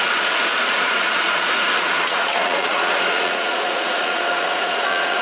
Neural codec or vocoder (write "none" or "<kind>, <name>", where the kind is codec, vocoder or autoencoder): vocoder, Vocos